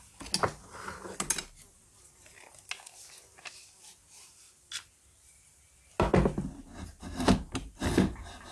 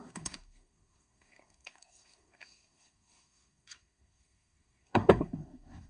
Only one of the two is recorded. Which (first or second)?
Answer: first